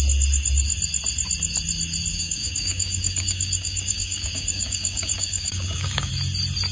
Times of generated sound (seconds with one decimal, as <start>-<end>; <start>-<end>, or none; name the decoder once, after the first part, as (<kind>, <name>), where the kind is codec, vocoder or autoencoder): 2.1-6.1 (codec, DAC)